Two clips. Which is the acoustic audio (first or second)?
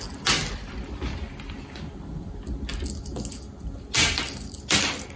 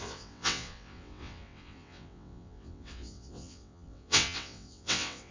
first